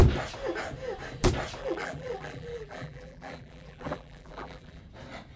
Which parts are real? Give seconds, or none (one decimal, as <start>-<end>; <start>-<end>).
0.0-1.6; 4.8-5.4